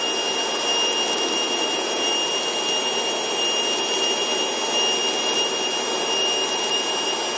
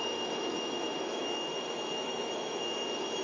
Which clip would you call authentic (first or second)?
first